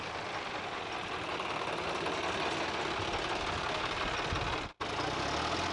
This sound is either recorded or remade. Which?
recorded